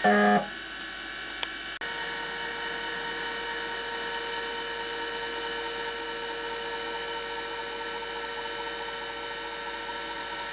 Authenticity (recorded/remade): recorded